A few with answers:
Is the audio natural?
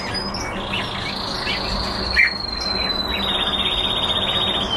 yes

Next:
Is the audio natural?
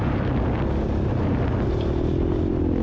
yes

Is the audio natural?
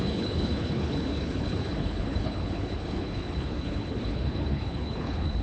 no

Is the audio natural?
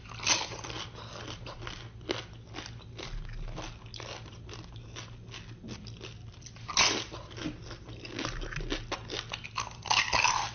yes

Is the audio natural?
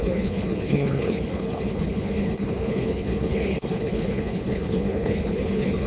no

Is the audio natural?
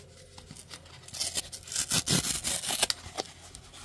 yes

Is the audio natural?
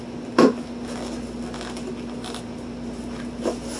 yes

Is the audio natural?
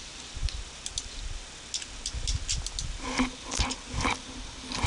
yes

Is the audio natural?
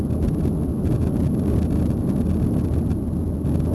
yes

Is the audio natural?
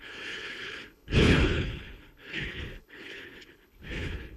no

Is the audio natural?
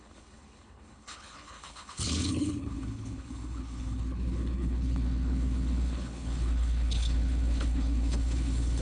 no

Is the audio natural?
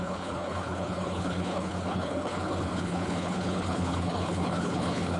no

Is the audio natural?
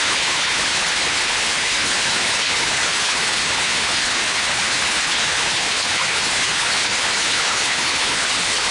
no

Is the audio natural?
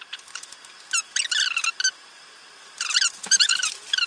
yes